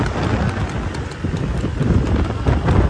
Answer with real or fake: real